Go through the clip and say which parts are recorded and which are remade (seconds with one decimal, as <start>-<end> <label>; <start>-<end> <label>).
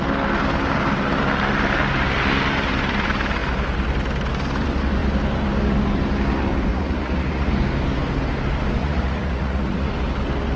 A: 0.0-6.7 recorded; 6.7-7.5 remade; 7.5-8.8 recorded; 8.8-9.9 remade; 9.9-10.6 recorded